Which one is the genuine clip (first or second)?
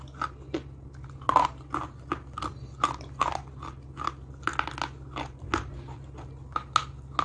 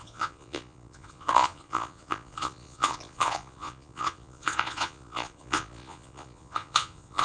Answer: first